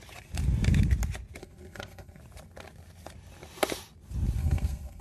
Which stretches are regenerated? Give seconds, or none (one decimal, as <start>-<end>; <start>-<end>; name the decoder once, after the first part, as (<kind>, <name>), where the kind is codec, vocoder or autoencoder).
1.4-2.2 (codec, SNAC); 4.4-5.0